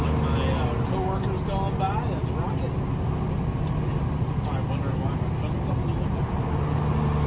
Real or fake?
real